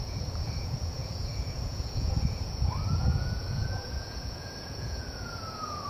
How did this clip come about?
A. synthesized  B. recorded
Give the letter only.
A